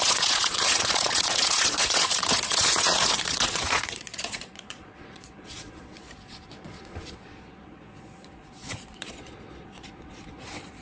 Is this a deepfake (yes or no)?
yes